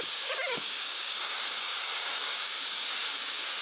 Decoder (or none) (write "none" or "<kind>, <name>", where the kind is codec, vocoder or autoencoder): codec, DAC